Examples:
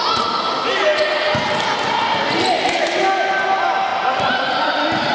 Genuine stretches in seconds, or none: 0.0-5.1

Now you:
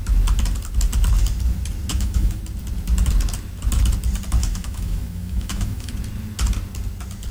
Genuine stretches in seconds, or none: 0.0-1.9; 2.4-4.4; 5.9-7.3

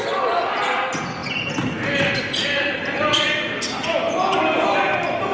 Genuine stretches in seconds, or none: 0.0-5.3

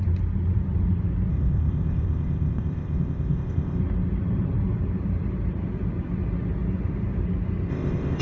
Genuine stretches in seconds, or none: 0.0-1.3; 3.8-7.7

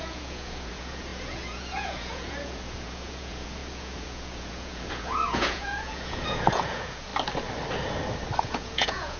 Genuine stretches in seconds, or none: 7.1-8.4